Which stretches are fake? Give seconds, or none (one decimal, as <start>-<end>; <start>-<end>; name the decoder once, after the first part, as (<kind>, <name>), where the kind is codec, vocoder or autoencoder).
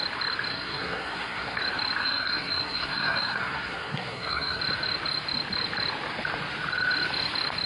0.5-1.6 (codec, SNAC); 2.0-4.6